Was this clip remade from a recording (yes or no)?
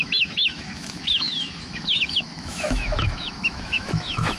yes